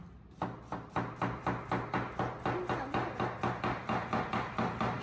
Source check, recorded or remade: recorded